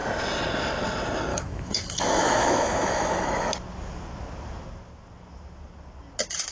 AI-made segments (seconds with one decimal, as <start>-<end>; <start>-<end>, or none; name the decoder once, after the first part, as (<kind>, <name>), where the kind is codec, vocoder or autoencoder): 1.3-3.5 (autoencoder, DAC-VAE)